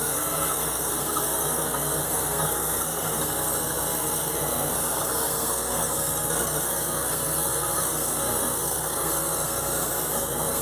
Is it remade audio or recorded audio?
remade